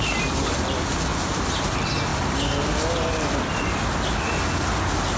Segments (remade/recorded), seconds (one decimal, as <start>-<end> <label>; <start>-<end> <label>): 0.0-5.2 recorded